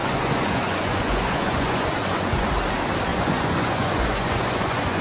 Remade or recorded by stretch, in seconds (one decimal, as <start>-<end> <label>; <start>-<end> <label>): 0.0-2.5 remade; 2.5-3.1 recorded; 3.1-5.0 remade